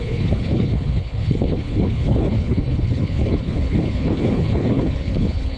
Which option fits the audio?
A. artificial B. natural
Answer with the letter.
A